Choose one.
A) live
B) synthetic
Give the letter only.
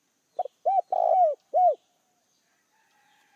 A